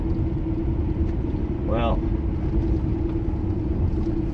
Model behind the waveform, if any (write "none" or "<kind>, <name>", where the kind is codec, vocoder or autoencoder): none